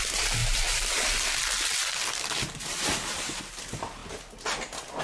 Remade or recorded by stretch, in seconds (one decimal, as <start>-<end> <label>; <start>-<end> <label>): 0.0-5.0 recorded